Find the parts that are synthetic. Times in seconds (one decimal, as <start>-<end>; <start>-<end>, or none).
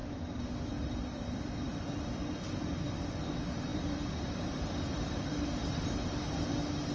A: 0.0-3.0; 3.7-5.9